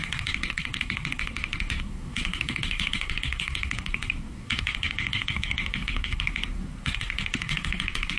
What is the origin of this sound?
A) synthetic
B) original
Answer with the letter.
A